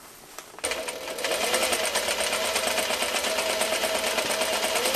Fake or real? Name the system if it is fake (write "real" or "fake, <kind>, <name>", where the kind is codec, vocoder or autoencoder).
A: real